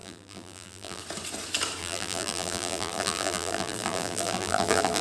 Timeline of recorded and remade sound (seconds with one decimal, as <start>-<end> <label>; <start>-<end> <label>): 0.0-1.0 remade; 1.0-1.8 recorded; 1.8-5.0 remade